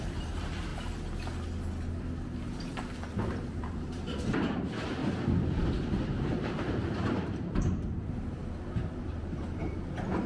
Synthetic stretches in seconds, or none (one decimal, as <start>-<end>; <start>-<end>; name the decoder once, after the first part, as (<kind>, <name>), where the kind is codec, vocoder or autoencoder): 0.0-0.7 (vocoder, BigVGAN v2); 1.9-5.0; 5.7-8.4; 9.0-10.3